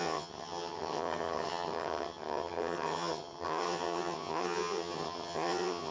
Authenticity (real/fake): fake